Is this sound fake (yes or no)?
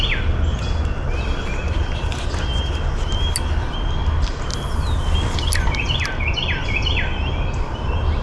no